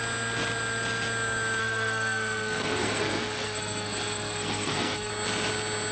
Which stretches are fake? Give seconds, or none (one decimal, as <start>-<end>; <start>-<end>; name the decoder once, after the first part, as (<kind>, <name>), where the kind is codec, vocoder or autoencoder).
1.6-5.1 (codec, SNAC)